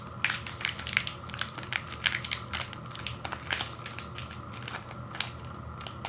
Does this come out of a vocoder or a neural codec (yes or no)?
no